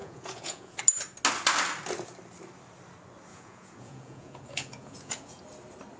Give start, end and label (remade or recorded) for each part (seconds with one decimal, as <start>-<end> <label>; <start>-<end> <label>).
0.0-0.8 remade; 0.8-3.3 recorded; 3.3-5.4 remade; 5.4-6.0 recorded